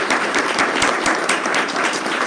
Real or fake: fake